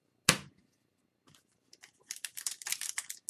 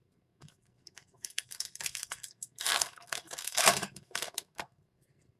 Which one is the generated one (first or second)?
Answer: second